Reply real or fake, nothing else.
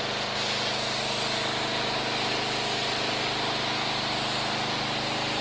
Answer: real